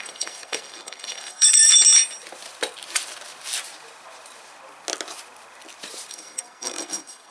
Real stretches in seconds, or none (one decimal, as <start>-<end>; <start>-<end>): 1.7-6.1